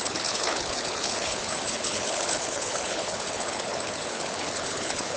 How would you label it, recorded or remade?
remade